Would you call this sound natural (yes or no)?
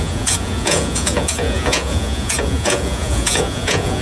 no